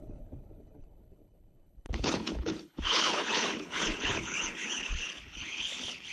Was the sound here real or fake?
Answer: fake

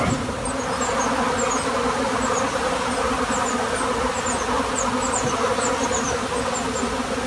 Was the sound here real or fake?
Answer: real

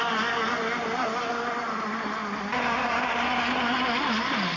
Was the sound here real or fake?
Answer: real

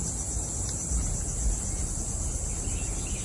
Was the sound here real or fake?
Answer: real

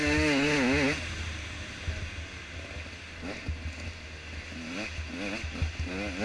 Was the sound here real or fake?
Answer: real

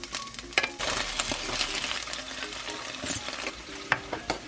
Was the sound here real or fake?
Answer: real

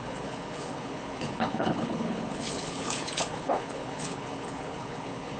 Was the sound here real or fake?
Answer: fake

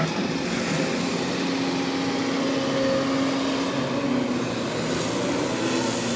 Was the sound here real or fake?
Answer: real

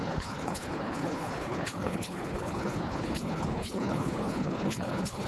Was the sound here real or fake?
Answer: fake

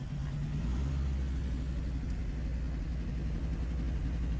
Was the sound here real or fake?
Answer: real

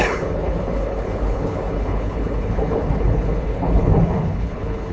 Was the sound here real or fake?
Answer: fake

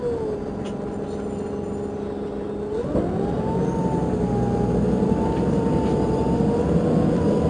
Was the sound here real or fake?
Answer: real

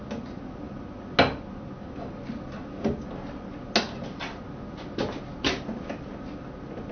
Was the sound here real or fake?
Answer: real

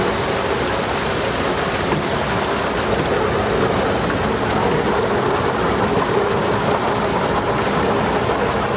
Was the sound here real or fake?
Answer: real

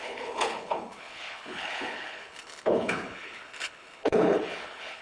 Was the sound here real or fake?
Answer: fake